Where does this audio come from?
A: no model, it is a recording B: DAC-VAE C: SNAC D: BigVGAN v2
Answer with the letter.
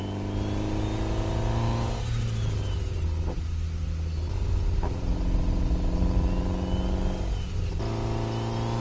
A